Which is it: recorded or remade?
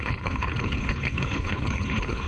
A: remade